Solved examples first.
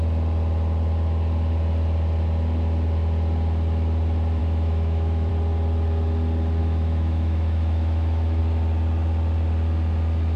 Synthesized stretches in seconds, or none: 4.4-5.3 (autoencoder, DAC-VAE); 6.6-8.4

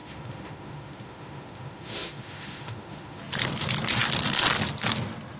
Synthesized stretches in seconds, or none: 0.0-3.2 (autoencoder, DAC-VAE)

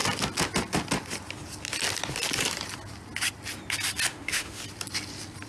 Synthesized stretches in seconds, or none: 4.1-4.6 (autoencoder, DAC-VAE)

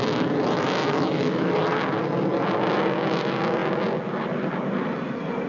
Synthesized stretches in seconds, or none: 0.8-1.5 (autoencoder, DAC-VAE)